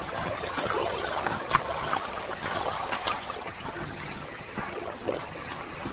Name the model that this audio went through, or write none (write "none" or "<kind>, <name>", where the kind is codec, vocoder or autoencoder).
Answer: vocoder, HiFi-GAN